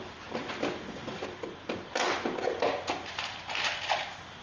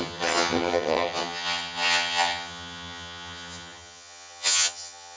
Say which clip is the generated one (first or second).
second